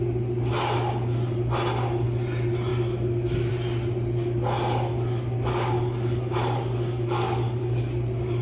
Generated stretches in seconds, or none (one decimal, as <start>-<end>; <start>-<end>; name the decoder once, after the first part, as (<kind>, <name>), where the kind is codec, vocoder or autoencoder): 5.5-7.9 (codec, DAC)